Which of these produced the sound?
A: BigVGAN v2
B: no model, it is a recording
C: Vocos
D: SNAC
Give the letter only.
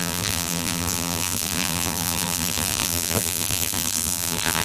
A